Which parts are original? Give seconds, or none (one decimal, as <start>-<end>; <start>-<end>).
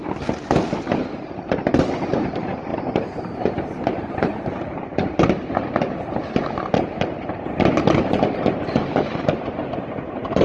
none